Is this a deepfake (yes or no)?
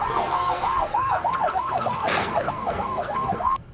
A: yes